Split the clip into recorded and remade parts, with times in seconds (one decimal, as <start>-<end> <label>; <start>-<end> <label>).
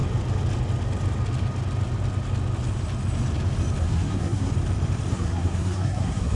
0.0-3.8 recorded; 3.8-4.5 remade; 4.5-5.1 recorded; 5.1-6.4 remade